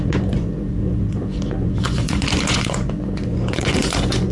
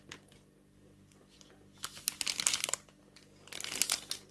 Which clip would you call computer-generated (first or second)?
first